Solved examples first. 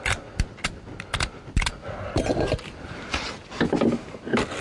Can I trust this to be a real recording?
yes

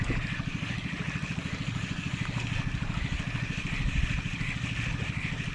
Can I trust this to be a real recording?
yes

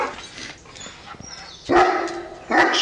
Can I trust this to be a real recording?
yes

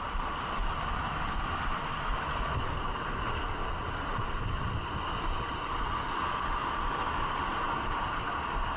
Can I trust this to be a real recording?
yes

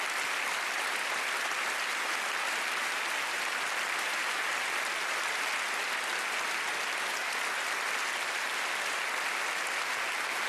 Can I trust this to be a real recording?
yes